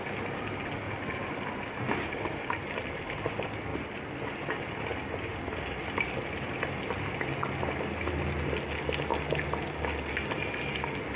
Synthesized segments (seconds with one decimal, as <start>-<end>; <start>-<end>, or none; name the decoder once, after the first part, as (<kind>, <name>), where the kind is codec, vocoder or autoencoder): 3.7-5.3 (vocoder, BigVGAN v2)